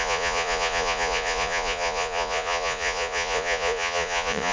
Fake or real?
fake